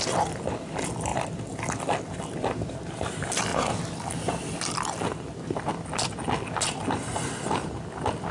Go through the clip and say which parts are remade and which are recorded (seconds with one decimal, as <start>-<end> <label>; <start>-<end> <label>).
0.0-8.3 remade